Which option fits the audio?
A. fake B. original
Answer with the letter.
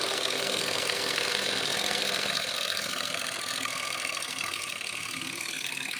A